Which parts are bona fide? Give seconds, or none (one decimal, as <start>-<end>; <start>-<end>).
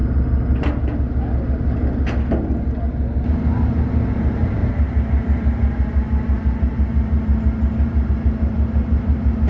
0.0-4.1